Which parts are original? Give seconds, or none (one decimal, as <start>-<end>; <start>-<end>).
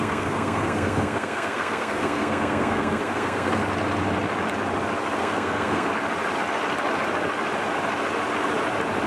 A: 3.6-5.2; 5.9-9.1